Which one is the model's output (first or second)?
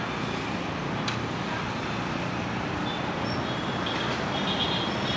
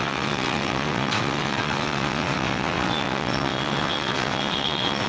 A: second